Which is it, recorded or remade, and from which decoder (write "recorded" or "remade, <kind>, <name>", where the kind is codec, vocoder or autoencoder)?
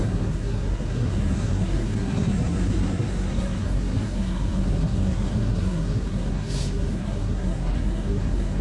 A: remade, codec, SNAC